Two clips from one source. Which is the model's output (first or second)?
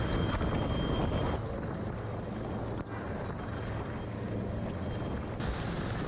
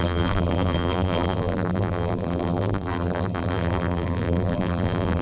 second